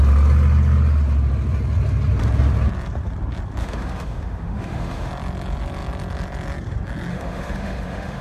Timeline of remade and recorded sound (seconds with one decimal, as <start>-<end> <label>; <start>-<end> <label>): 0.0-3.6 recorded; 3.6-5.1 remade; 5.1-7.1 recorded; 7.1-8.2 remade